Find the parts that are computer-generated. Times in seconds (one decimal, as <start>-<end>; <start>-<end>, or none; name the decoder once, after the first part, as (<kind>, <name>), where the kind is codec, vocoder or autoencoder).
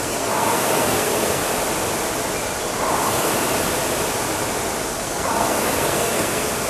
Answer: 0.0-1.4 (codec, SNAC); 2.9-3.3; 4.9-6.7